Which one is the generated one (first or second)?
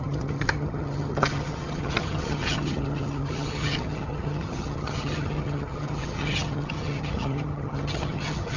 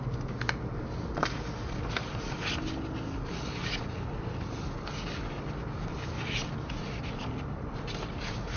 first